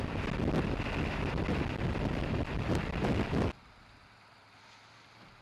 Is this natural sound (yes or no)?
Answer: yes